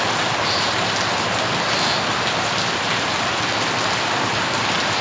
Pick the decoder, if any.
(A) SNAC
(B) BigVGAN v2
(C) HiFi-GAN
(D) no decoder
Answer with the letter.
D